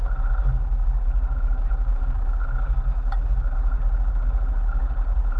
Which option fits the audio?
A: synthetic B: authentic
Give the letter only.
A